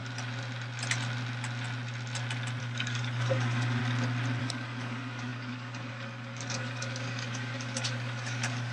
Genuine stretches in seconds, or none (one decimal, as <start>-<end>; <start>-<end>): 0.0-2.6; 3.8-4.4